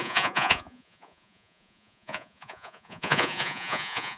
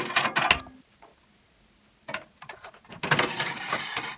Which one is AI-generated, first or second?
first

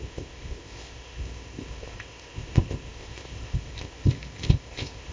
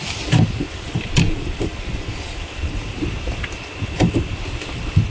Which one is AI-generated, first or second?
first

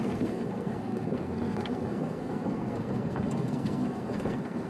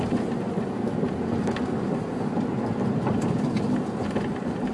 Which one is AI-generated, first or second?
first